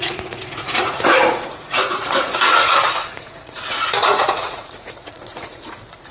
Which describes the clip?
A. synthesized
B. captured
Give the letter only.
A